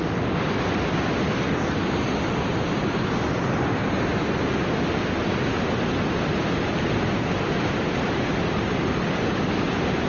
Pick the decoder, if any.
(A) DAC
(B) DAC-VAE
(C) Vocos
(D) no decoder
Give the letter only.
D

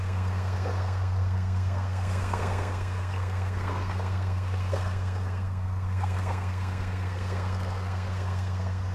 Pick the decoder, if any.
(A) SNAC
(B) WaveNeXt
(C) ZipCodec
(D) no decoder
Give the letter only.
A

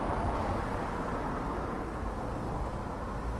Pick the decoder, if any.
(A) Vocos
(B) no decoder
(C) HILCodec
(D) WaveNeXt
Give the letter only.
B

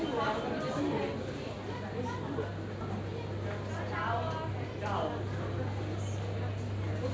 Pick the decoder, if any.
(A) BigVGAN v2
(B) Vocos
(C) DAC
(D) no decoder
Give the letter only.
D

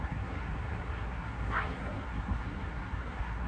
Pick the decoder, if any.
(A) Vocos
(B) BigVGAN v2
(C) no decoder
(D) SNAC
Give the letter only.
D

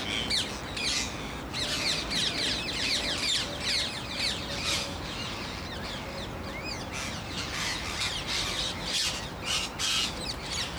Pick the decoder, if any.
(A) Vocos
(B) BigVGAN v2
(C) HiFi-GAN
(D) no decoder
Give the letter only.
D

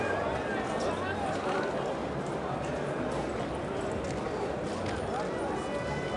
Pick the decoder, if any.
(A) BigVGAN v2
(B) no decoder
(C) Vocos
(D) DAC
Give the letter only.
B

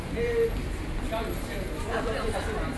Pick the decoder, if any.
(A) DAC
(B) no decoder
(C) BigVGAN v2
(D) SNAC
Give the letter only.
B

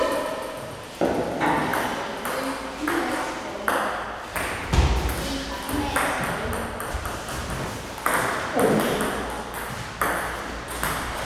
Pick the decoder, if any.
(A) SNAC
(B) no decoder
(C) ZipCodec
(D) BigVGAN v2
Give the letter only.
B